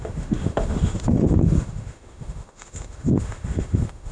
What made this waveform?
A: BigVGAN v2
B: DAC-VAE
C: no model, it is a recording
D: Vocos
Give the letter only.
B